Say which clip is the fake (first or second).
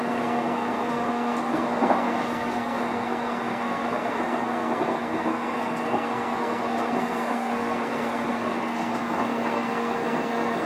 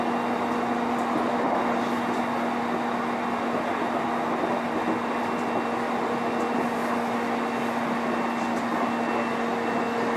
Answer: first